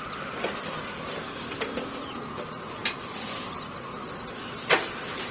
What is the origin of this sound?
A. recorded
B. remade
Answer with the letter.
A